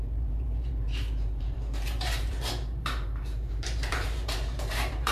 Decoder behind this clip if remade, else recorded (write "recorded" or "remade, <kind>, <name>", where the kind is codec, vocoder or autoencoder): remade, vocoder, BigVGAN v2